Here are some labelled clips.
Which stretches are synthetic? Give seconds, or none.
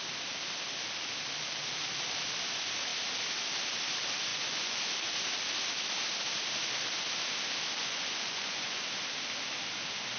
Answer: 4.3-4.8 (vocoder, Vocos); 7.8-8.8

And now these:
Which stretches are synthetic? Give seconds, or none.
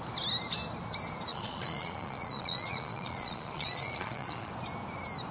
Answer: 1.3-4.5 (vocoder, Vocos)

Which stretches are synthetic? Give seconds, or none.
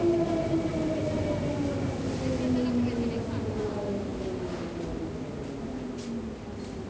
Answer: none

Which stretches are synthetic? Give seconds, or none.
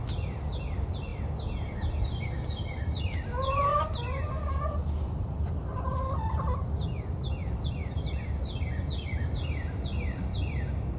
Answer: none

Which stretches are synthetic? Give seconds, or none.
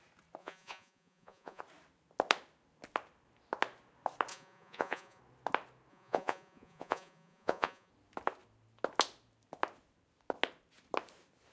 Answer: 0.4-1.6 (vocoder, Vocos); 4.3-5.2; 5.9-7.9